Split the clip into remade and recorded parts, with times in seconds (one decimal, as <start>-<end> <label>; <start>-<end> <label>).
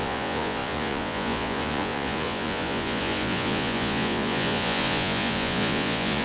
0.0-6.2 remade